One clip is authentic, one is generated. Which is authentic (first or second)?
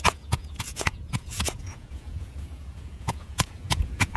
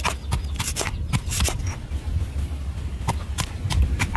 second